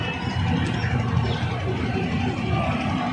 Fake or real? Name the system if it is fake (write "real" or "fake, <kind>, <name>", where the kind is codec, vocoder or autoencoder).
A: real